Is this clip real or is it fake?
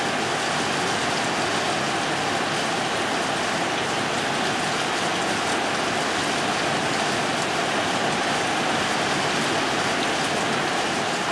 real